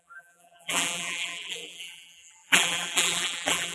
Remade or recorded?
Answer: remade